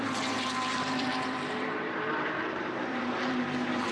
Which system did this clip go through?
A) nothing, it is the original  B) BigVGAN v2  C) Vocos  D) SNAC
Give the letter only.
B